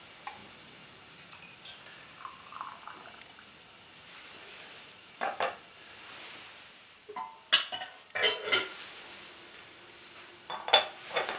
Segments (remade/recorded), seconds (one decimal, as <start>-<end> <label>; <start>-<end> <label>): 0.0-11.4 recorded